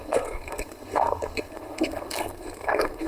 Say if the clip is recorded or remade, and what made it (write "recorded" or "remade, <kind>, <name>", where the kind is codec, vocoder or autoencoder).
remade, codec, SNAC